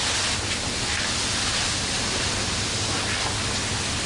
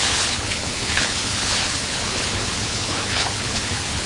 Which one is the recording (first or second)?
first